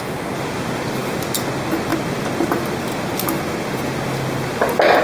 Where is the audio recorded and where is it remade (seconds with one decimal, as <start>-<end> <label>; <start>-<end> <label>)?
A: 0.0-5.0 recorded